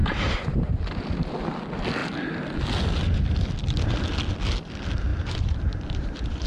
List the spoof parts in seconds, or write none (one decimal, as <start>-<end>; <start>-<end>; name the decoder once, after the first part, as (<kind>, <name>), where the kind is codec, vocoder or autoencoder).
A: 0.0-0.7 (vocoder, BigVGAN v2); 5.1-6.5